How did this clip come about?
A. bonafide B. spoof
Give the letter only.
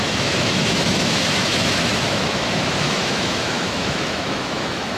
B